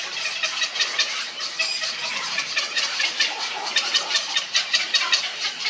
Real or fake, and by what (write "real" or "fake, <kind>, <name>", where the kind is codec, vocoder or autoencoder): fake, vocoder, BigVGAN v2